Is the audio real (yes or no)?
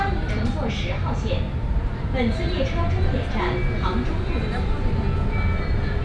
yes